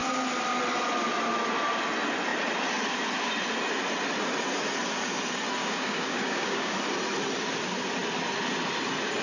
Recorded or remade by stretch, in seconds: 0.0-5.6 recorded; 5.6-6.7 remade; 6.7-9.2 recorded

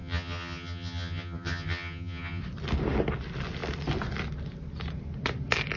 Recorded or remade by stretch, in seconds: 0.0-2.4 remade; 2.4-5.8 recorded

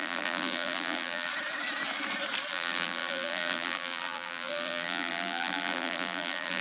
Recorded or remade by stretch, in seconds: 0.0-1.3 remade; 1.3-2.5 recorded; 2.5-6.6 remade

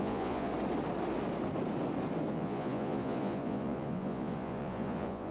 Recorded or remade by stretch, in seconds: 0.0-0.5 remade; 0.5-2.3 recorded; 2.3-5.3 remade

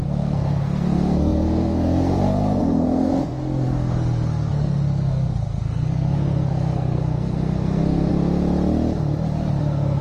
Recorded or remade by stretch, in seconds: 0.0-8.1 remade; 8.1-9.6 recorded; 9.6-10.0 remade

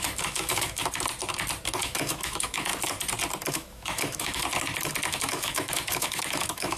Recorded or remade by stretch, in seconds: 0.0-0.8 remade; 0.8-1.8 recorded; 1.8-2.7 remade; 2.7-3.5 recorded; 3.5-4.4 remade; 4.4-5.1 recorded; 5.1-6.8 remade

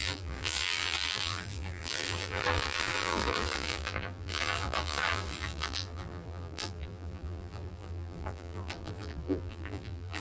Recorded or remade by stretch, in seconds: 0.0-10.2 remade